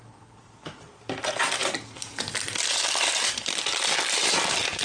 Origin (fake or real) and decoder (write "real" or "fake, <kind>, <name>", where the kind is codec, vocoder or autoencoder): real